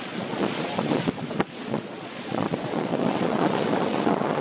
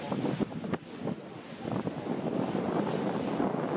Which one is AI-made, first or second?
first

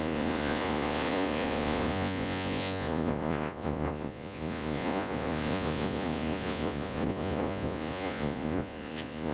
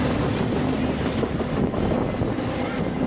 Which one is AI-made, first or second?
first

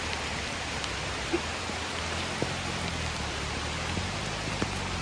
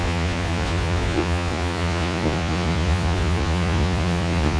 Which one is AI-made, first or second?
second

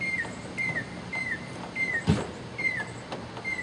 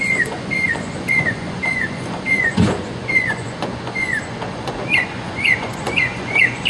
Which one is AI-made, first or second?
second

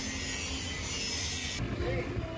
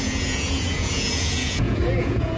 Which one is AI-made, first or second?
second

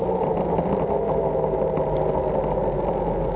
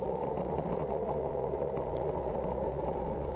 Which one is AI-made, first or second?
second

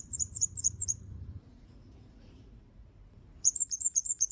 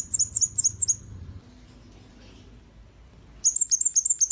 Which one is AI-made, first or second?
first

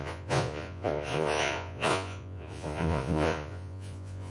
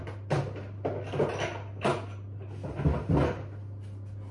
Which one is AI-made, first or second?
first